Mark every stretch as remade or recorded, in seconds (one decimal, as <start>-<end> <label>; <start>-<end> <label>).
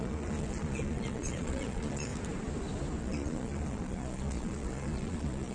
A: 0.0-2.1 remade; 2.1-3.0 recorded; 3.0-5.5 remade